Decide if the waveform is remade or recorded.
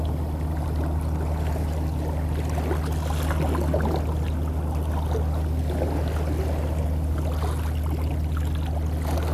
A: recorded